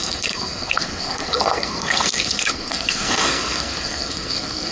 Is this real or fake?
fake